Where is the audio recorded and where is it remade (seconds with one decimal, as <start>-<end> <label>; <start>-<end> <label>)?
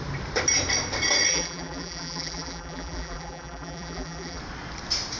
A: 0.0-1.3 recorded; 1.3-4.4 remade; 4.4-5.2 recorded